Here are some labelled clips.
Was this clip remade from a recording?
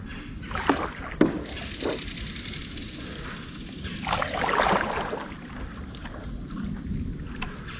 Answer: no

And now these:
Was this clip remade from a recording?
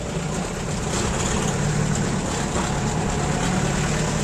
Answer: yes